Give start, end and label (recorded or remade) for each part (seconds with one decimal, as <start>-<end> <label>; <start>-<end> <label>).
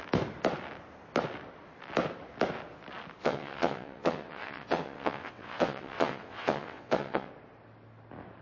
0.0-3.2 recorded; 3.2-7.3 remade; 7.3-8.4 recorded